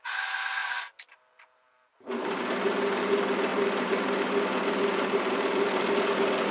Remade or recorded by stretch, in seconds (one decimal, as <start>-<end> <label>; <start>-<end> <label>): 0.0-0.6 recorded; 0.6-2.4 remade; 2.4-3.5 recorded; 3.5-4.2 remade; 4.2-6.5 recorded